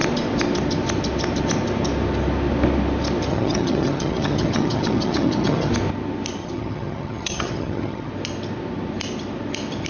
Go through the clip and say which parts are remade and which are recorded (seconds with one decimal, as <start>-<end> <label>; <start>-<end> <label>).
0.0-3.3 recorded; 3.3-5.7 remade; 5.7-6.4 recorded; 6.4-8.1 remade; 8.1-9.9 recorded